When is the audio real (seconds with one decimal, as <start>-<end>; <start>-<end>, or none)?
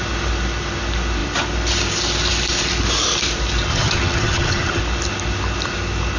0.0-3.7; 4.8-6.2